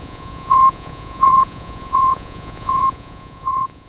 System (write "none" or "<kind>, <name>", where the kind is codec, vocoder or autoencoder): vocoder, Vocos